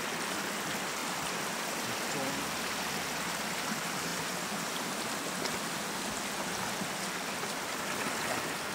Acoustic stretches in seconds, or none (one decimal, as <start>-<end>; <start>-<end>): 0.0-1.0; 2.3-8.7